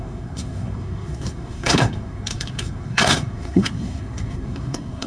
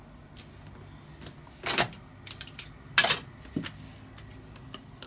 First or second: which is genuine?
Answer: second